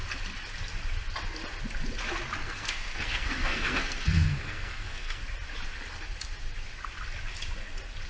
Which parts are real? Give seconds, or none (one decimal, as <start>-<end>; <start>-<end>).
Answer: 0.0-2.4; 5.2-8.1